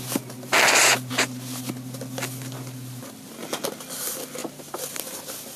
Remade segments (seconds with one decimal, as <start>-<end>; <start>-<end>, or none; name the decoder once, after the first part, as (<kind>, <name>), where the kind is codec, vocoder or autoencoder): none